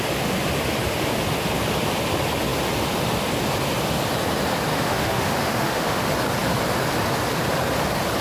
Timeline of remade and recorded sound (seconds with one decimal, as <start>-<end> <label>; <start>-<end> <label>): 0.0-4.7 recorded; 4.7-6.0 remade; 6.0-8.2 recorded